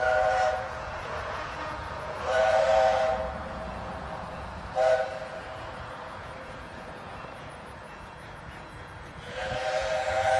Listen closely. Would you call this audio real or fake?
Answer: fake